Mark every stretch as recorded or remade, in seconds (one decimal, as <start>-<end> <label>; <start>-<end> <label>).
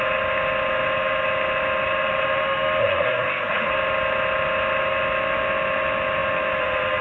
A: 0.0-2.8 recorded; 2.8-3.7 remade; 3.7-7.0 recorded